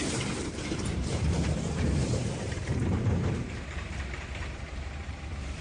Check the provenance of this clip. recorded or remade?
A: remade